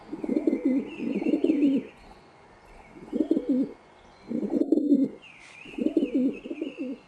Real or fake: fake